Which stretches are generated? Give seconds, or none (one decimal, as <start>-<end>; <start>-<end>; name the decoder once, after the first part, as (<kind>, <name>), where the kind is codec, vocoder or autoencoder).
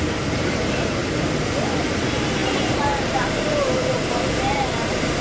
0.0-1.0 (vocoder, BigVGAN v2); 1.8-5.2